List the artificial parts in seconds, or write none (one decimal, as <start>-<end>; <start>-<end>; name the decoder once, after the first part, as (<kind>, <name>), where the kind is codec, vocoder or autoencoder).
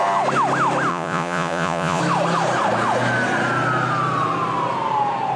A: 0.9-2.0 (vocoder, Vocos)